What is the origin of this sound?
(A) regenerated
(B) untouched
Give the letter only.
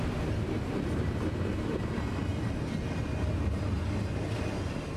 B